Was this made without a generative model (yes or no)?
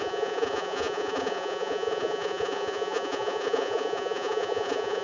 no